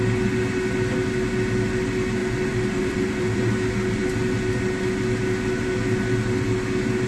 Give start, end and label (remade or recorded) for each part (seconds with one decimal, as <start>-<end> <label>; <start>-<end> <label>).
0.0-2.2 recorded; 2.2-3.5 remade; 3.5-7.1 recorded